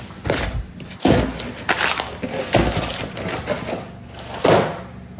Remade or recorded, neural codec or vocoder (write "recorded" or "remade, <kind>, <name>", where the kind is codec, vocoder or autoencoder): recorded